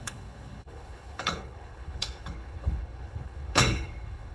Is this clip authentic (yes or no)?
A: no